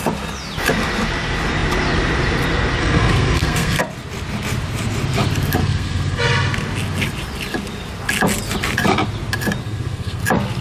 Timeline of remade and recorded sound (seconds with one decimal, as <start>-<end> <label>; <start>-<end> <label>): 0.0-2.8 recorded; 2.8-3.8 remade; 3.8-5.6 recorded; 5.6-6.2 remade; 6.2-9.6 recorded; 9.6-10.2 remade; 10.2-10.6 recorded